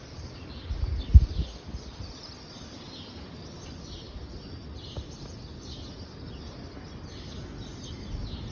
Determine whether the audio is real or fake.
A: real